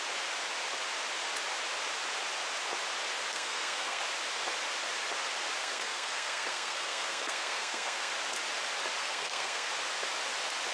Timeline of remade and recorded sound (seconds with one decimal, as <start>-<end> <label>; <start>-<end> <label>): 0.0-3.3 recorded; 3.3-4.0 remade; 4.0-5.6 recorded; 5.6-8.1 remade; 8.1-9.0 recorded; 9.0-9.7 remade; 9.7-10.7 recorded